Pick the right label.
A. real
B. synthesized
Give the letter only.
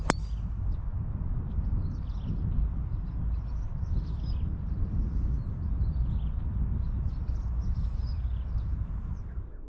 A